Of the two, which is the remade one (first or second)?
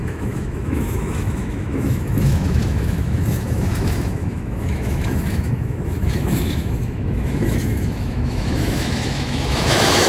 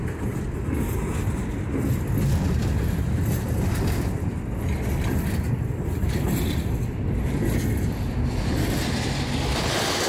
first